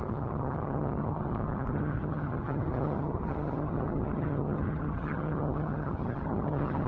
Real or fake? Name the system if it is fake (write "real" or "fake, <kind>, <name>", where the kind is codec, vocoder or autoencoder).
fake, vocoder, HiFi-GAN